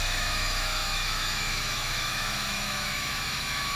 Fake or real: fake